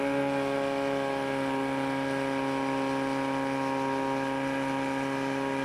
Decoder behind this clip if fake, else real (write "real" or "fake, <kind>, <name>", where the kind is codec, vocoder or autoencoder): real